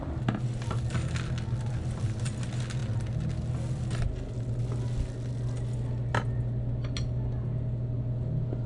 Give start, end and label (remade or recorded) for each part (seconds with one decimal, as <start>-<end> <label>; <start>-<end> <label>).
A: 0.0-8.7 recorded